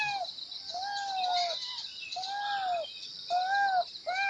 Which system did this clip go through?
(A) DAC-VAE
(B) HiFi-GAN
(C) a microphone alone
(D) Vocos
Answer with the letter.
C